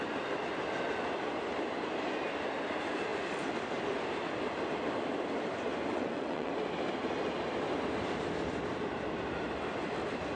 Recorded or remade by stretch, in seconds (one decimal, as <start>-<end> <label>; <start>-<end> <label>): 0.0-5.9 recorded; 5.9-6.5 remade; 6.5-10.4 recorded